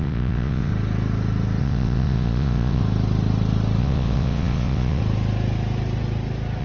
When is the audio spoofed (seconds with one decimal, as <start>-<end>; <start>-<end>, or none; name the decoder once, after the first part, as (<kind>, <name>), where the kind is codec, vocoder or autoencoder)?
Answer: 0.0-0.7 (vocoder, WaveNeXt); 1.6-2.8; 3.8-5.0